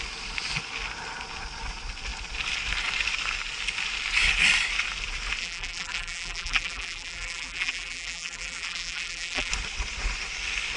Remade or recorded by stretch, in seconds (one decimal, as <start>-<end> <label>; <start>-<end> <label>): 0.0-5.4 recorded; 5.4-9.5 remade; 9.5-10.8 recorded